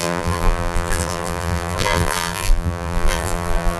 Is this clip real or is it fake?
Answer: fake